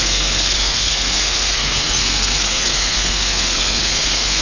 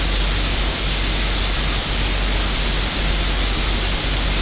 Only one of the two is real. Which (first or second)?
second